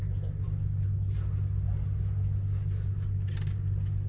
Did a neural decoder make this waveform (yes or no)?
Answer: no